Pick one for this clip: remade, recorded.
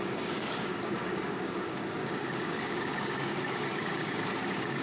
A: remade